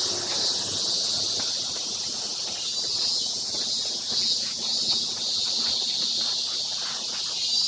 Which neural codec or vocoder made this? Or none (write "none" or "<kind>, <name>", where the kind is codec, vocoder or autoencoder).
none